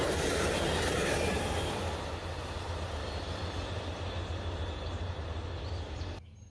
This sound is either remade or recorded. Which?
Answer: recorded